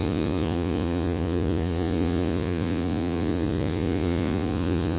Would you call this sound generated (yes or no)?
yes